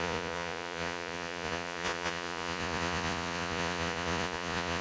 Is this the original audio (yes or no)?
no